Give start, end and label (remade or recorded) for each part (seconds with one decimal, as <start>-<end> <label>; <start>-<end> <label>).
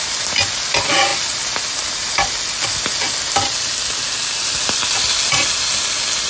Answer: 0.0-6.3 recorded